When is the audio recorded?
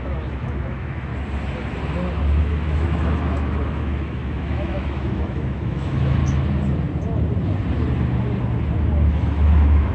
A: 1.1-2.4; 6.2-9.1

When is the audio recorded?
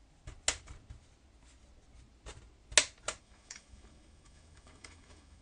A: 0.0-3.2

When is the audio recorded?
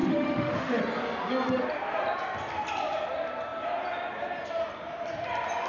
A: 0.8-5.7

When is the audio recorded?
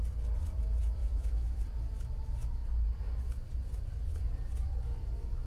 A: 0.0-1.0; 1.6-5.5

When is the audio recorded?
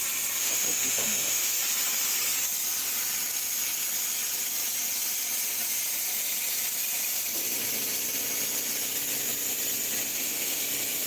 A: 0.0-0.4; 1.6-10.1; 10.6-11.1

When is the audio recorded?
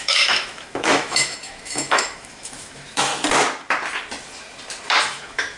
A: 3.1-5.0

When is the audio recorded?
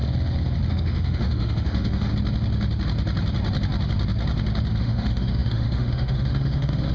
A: 0.0-0.7; 2.1-4.8